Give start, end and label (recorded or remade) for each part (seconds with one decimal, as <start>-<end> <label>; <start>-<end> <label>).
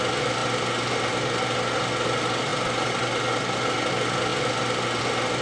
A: 0.0-5.4 recorded